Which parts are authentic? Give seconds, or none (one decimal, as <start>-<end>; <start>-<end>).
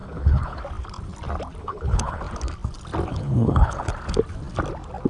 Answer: 0.6-1.6; 2.2-3.1; 3.9-5.1